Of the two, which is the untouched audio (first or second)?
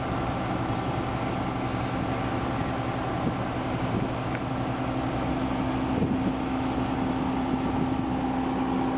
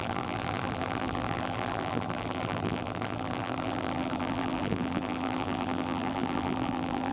first